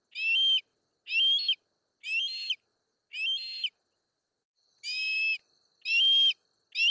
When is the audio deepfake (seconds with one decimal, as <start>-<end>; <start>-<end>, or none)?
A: none